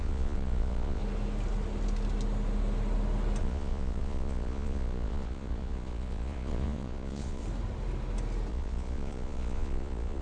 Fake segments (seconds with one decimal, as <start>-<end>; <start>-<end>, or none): 0.0-1.0; 3.4-7.4; 8.5-10.2